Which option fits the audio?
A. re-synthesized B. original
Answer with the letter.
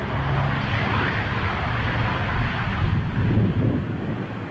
B